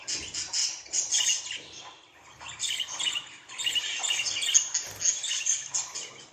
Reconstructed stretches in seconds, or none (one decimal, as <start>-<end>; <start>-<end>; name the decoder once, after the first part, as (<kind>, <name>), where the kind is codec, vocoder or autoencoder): none